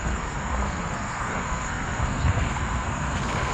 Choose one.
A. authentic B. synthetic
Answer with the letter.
B